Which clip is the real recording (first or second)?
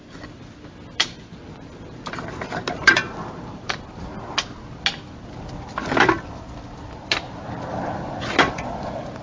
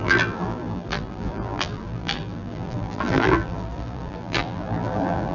first